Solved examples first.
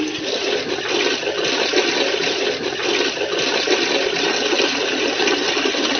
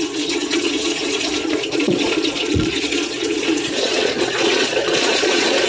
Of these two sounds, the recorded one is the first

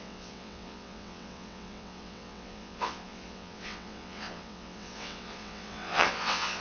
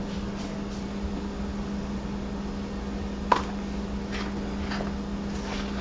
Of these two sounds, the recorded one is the second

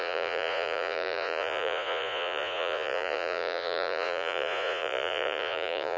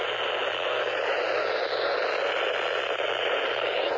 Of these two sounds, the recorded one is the second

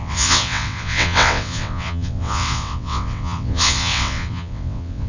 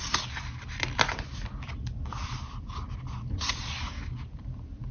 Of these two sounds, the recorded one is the second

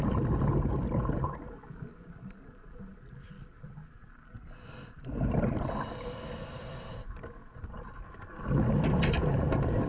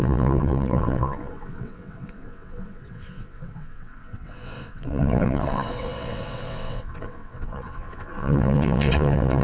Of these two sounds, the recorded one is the first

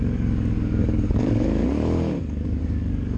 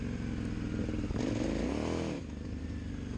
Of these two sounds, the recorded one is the second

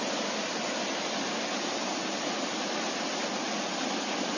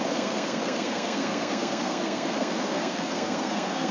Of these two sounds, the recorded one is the first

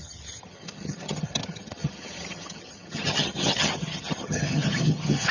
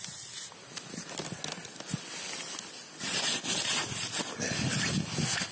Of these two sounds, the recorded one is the second